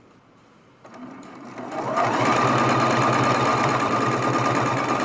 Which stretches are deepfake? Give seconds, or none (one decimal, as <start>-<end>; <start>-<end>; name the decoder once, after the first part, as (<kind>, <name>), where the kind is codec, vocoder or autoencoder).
3.5-4.0 (vocoder, BigVGAN v2)